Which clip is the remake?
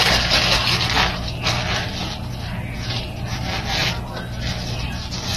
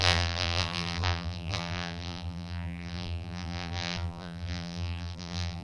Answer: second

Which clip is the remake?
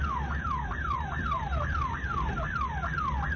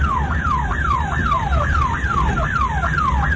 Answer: second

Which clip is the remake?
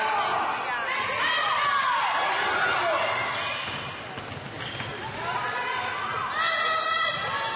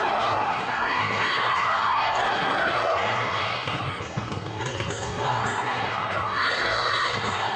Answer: second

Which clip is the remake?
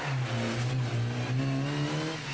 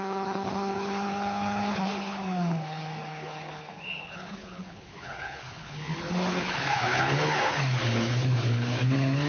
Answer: second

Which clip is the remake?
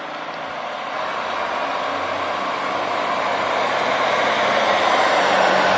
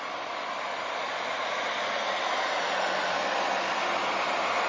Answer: second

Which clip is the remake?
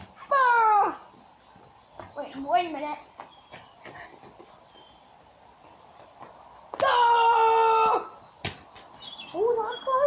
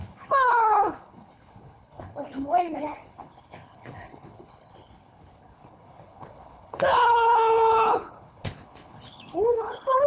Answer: second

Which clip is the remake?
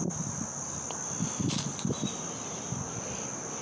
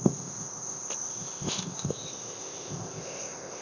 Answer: second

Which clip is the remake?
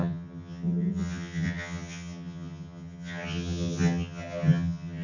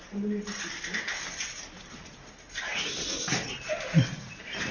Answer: first